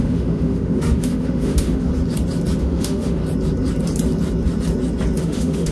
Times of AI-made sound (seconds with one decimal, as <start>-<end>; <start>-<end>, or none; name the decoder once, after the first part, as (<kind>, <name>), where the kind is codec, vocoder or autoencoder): 0.0-1.9 (autoencoder, DAC-VAE); 2.6-3.2; 5.2-5.7